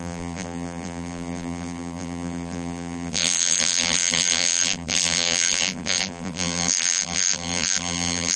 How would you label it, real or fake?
fake